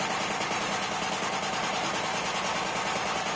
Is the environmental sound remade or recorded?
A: recorded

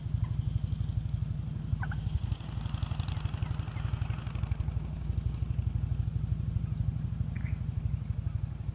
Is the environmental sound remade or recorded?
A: recorded